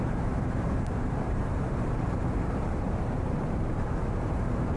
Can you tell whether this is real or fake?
fake